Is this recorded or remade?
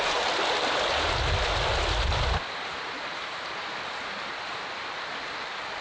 recorded